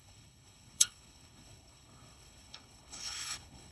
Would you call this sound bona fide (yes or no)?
no